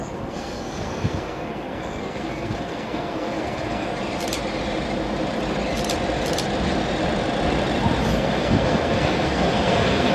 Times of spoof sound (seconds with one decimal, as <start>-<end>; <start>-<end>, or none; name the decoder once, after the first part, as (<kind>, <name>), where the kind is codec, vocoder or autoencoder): 0.0-3.9 (codec, SNAC); 8.1-10.1